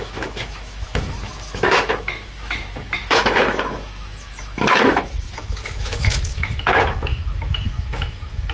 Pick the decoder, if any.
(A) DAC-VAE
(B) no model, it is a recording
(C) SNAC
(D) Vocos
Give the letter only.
A